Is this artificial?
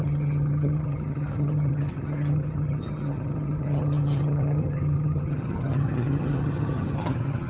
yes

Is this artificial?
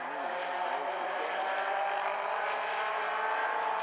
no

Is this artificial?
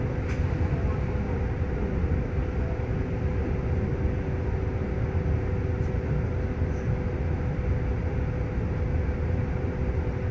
no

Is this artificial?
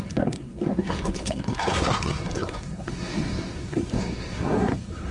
yes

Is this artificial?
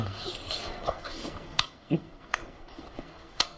yes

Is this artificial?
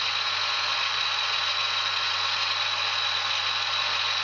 no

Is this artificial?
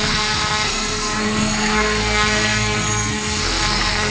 yes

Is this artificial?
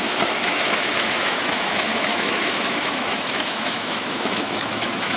yes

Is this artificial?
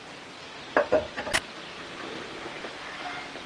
no